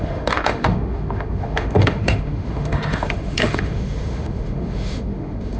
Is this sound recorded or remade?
remade